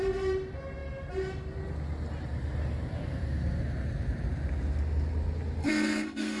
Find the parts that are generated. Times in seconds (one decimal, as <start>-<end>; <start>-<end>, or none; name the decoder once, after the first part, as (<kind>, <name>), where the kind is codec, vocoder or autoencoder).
5.6-6.4 (codec, SNAC)